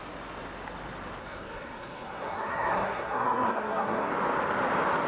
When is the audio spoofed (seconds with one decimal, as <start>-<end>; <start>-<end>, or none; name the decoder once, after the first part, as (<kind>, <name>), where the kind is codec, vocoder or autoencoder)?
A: 1.2-4.1 (codec, SNAC)